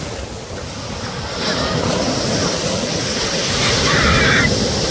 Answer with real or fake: real